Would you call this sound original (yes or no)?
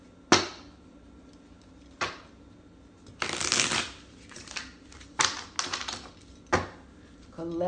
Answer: yes